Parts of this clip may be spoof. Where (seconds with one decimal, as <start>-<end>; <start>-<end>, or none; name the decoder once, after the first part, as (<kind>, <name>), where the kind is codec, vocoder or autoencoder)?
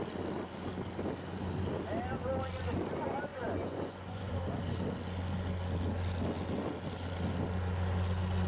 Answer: 3.3-4.3 (vocoder, Vocos)